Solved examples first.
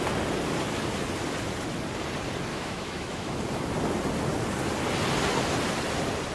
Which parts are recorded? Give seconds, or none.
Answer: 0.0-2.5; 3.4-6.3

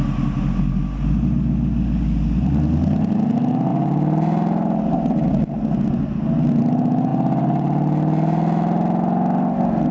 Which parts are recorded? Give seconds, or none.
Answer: 0.0-9.9

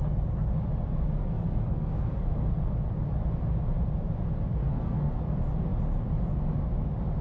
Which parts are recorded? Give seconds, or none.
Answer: 0.0-1.2; 2.6-4.6; 5.2-7.2